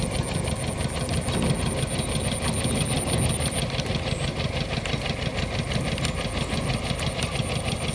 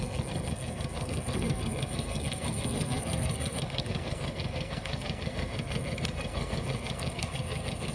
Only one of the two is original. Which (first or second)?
first